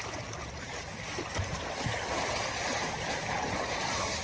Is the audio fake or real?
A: real